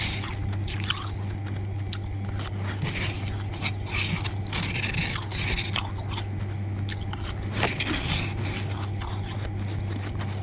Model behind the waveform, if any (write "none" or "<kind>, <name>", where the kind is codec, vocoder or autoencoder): none